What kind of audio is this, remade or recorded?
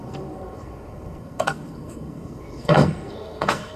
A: remade